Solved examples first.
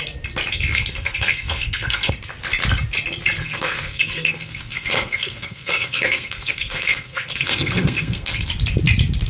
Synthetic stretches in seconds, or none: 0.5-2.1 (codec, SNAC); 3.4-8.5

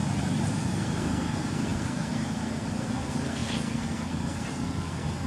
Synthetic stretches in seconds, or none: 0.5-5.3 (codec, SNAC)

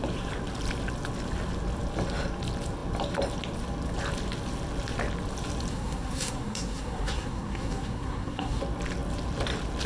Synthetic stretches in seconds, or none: 5.7-8.6 (codec, SNAC)